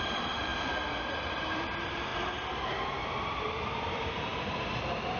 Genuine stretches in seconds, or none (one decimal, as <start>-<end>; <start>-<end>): 0.5-1.0; 2.1-3.0